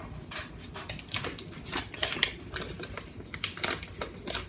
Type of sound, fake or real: real